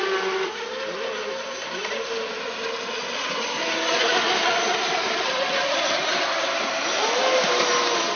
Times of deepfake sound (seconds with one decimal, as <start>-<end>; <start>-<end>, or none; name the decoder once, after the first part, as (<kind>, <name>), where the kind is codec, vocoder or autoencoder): none